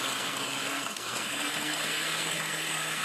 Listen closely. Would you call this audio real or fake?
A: fake